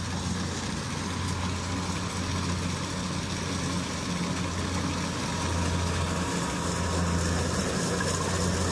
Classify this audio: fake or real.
real